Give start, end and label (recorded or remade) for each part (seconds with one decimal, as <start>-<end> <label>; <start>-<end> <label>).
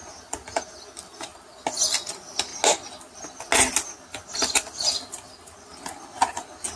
0.0-6.8 recorded